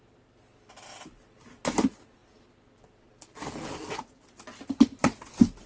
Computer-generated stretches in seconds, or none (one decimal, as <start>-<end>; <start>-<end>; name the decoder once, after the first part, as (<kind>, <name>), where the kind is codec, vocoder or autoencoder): none